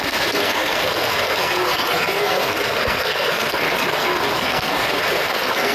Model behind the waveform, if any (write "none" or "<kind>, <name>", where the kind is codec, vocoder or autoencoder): codec, SNAC